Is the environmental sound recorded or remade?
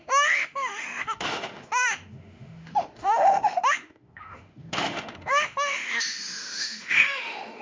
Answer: remade